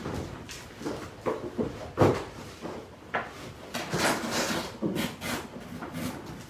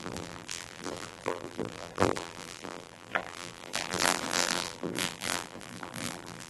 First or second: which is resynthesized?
second